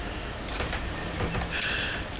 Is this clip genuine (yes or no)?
yes